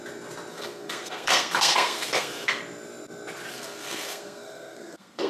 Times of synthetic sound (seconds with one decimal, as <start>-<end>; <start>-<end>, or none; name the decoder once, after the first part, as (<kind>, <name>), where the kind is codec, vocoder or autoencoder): 0.5-2.6 (codec, SNAC); 3.5-5.3